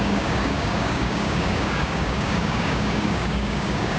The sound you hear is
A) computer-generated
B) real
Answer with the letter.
A